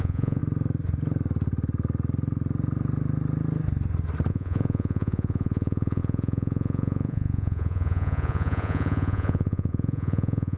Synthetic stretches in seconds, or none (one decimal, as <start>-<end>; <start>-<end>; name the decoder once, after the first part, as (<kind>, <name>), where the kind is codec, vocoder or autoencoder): 0.0-0.4 (vocoder, Vocos); 4.3-10.6